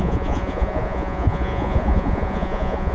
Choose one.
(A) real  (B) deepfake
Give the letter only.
B